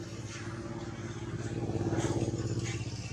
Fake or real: real